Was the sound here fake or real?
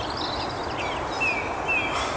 real